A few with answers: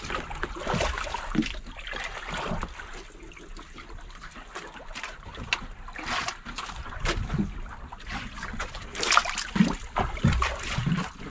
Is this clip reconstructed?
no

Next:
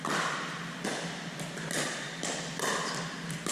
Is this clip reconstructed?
no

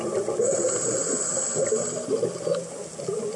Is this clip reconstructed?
no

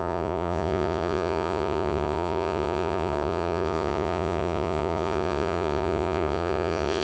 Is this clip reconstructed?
yes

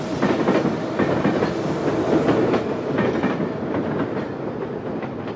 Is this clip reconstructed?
no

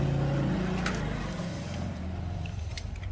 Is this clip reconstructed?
no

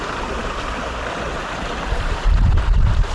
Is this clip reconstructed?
no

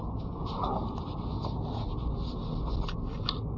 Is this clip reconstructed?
no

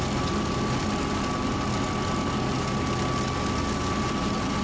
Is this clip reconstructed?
no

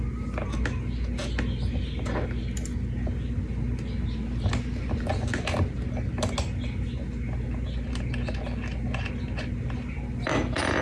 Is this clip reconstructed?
no